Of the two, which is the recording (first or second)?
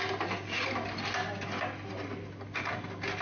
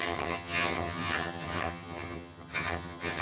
first